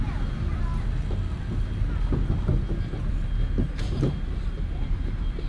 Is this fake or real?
real